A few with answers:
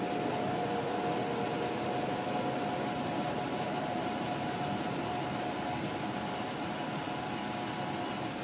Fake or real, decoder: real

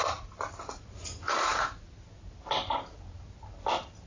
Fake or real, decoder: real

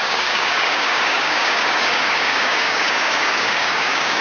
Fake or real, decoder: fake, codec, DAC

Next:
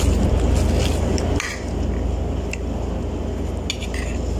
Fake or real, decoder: real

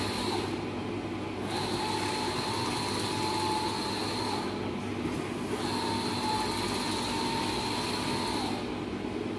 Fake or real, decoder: real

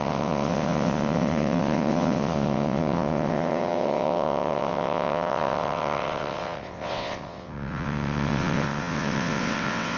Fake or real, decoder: fake, vocoder, WaveNeXt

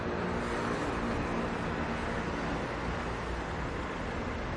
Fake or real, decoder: real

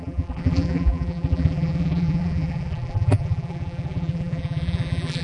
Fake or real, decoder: fake, vocoder, BigVGAN v2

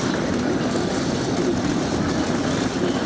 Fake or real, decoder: real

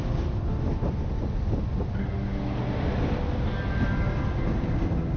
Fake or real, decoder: real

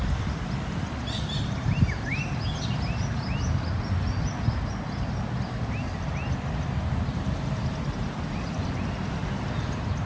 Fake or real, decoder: real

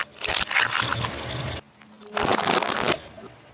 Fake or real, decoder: real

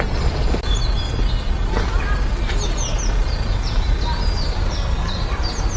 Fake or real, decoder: real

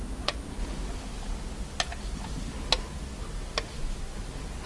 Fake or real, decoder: real